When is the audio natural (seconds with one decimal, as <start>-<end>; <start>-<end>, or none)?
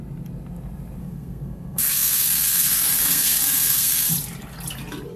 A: 0.0-1.0; 4.1-5.2